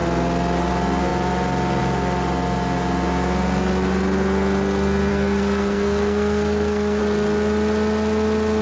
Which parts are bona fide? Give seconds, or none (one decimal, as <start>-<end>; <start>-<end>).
0.0-5.1; 7.0-8.6